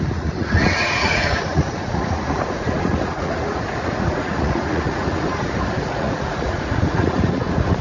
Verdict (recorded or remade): remade